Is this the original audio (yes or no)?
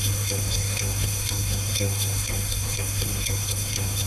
no